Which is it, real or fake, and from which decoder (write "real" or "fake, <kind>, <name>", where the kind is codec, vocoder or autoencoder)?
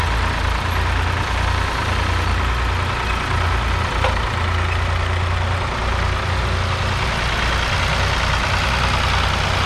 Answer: real